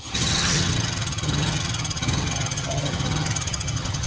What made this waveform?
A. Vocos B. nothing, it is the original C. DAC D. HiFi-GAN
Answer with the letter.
D